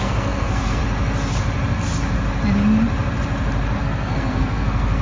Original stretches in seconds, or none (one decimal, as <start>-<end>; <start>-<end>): 0.8-3.8